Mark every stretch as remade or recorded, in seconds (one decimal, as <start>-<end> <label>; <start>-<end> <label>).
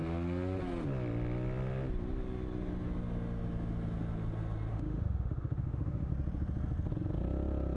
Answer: 0.0-4.7 recorded; 4.7-6.1 remade; 6.1-7.8 recorded